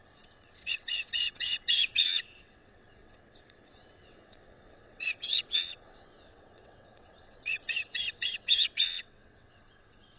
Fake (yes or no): yes